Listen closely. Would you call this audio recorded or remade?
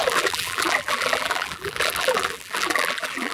remade